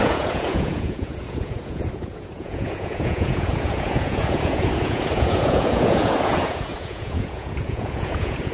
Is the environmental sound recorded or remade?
remade